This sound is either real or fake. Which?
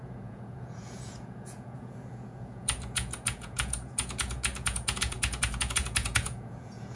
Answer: fake